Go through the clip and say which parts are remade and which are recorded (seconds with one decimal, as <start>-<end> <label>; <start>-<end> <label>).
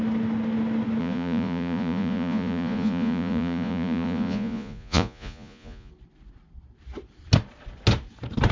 0.0-1.0 recorded; 1.0-5.9 remade; 5.9-8.5 recorded